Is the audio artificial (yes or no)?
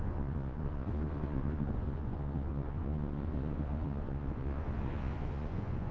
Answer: yes